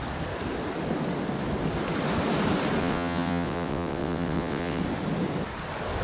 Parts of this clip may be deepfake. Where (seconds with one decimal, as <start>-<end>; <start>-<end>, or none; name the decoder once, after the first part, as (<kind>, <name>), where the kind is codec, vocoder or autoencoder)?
2.8-4.8 (vocoder, WaveNeXt)